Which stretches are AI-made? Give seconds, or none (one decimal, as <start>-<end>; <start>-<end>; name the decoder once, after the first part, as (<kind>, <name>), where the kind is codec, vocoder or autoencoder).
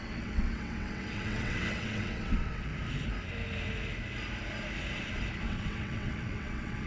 0.0-2.7 (vocoder, WaveNeXt); 5.4-6.9